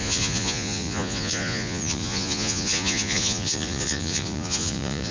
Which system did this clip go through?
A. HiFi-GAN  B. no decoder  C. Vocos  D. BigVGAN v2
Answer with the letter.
C